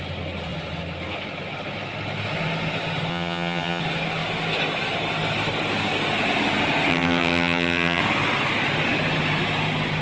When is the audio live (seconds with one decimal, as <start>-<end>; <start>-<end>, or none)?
0.0-3.1; 3.8-6.9; 8.0-10.0